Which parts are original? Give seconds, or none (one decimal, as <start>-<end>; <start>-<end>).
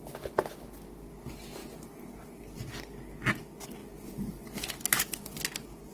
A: 0.0-1.6; 2.7-3.8; 4.7-5.9